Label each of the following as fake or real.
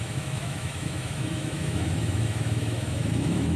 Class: fake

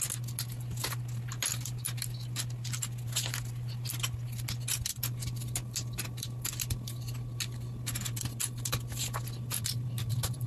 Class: real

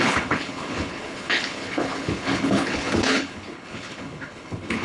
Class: fake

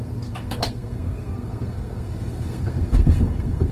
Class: fake